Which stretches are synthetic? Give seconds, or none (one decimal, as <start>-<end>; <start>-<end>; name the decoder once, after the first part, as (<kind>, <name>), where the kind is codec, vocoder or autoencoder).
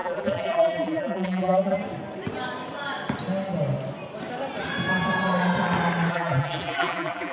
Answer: 0.0-1.8 (vocoder, BigVGAN v2); 6.1-7.3